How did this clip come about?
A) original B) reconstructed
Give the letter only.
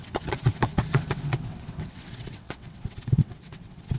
B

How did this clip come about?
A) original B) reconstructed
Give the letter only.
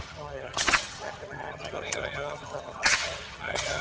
B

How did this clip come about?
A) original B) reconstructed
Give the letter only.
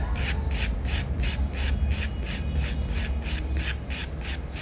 A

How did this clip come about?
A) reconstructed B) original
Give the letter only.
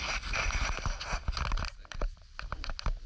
B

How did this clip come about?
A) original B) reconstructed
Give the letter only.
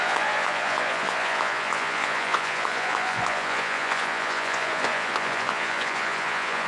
B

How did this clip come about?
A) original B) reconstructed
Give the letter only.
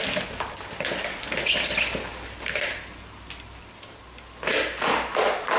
A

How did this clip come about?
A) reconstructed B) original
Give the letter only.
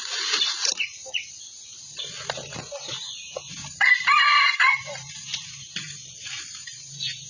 A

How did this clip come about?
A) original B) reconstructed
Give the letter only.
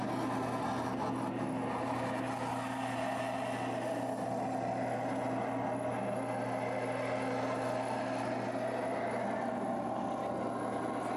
A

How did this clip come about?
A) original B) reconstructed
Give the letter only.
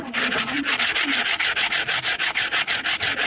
A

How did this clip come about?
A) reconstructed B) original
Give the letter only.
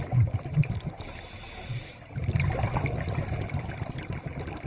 B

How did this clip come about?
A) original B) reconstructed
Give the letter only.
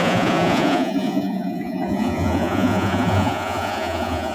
B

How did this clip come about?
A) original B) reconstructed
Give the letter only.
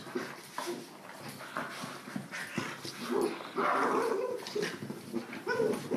A